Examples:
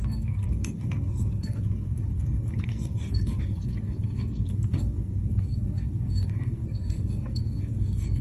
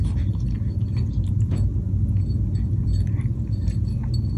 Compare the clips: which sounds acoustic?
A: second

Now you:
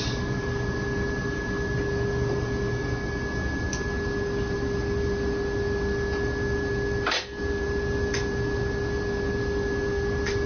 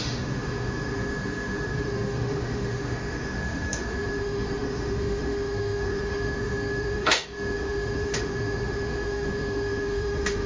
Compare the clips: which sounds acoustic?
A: first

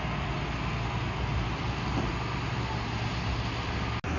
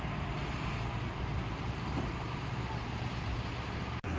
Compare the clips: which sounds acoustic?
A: first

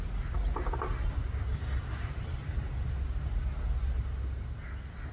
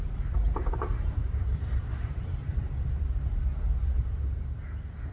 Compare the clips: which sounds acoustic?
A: first